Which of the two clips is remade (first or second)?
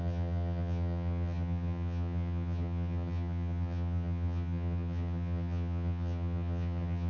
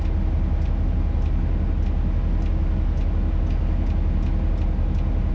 first